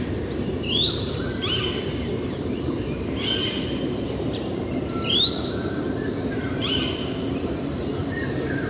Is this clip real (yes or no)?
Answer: no